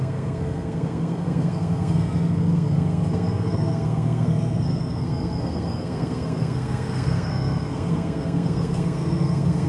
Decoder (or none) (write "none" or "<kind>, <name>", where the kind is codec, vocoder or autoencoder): codec, SNAC